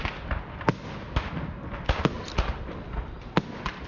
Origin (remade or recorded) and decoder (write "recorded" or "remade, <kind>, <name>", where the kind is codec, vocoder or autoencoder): recorded